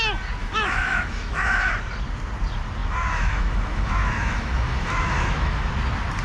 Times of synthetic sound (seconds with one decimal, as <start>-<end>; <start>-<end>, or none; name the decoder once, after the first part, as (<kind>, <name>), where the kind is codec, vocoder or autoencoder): 0.4-1.7 (autoencoder, DAC-VAE); 2.8-5.7